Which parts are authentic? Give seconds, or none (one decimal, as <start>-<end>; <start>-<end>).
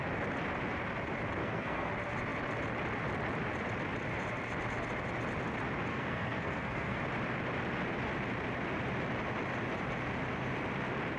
0.0-1.4; 1.9-5.9; 7.0-11.2